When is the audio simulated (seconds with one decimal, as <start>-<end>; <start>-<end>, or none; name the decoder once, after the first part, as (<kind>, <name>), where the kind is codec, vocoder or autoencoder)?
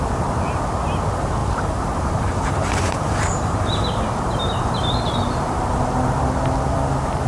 1.4-5.6 (vocoder, BigVGAN v2)